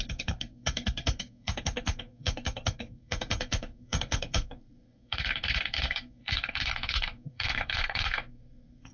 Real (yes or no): no